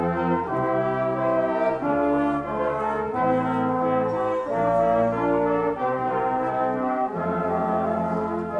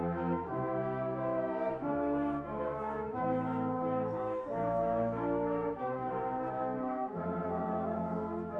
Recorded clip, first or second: first